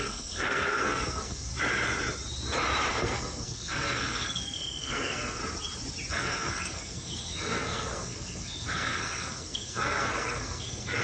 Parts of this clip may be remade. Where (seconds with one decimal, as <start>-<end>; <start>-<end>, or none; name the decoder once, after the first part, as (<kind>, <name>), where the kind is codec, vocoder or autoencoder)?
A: 0.0-1.5 (codec, SNAC); 2.9-5.4; 6.1-11.0